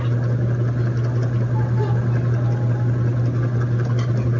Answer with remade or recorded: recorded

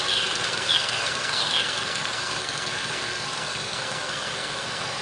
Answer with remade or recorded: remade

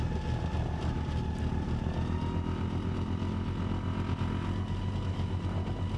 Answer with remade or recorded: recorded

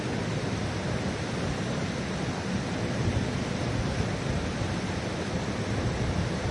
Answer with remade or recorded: recorded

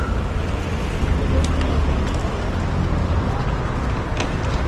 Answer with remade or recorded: recorded